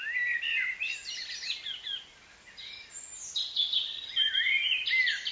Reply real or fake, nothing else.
real